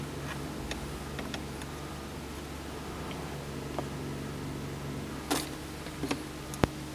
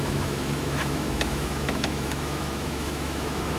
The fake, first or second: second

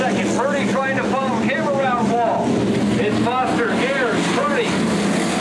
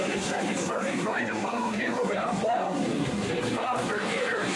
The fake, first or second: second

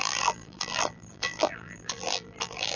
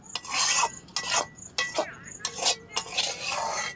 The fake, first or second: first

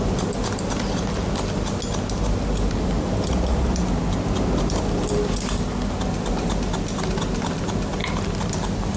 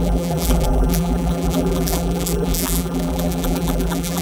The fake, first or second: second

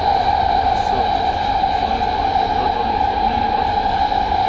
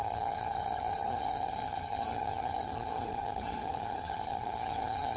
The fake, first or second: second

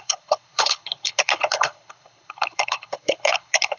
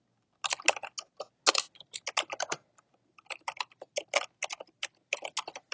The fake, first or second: first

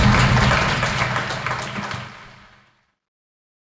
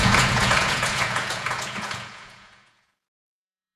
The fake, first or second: second